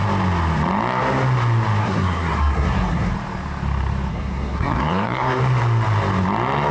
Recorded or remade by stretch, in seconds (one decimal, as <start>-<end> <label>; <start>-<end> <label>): 0.0-1.8 recorded; 1.8-3.1 remade; 3.1-4.1 recorded; 4.1-5.4 remade; 5.4-6.7 recorded